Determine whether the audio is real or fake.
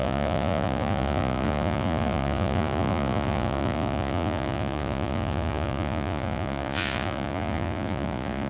fake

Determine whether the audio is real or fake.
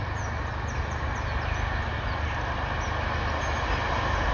real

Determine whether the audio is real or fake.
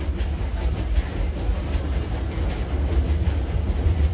real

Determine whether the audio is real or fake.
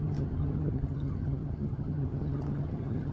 fake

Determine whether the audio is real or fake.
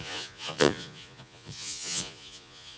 fake